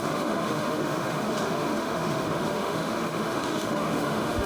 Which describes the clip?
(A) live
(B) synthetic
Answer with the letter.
B